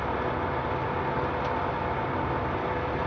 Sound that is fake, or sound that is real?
real